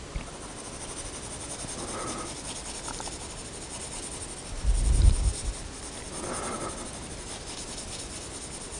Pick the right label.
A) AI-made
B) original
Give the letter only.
B